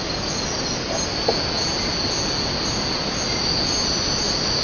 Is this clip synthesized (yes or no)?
no